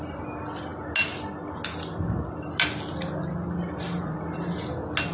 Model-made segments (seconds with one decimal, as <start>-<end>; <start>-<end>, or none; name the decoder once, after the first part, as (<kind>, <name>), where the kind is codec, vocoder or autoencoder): none